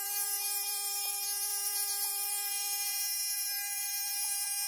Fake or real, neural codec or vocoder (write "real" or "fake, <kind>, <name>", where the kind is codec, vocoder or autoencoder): fake, vocoder, BigVGAN v2